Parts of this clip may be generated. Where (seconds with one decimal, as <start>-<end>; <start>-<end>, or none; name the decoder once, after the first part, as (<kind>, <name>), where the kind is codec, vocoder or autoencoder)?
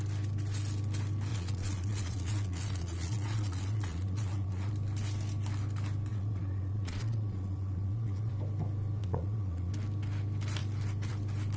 1.3-4.7 (vocoder, Vocos); 6.1-8.3; 9.0-9.7